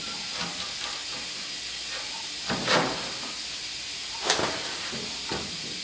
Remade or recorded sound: recorded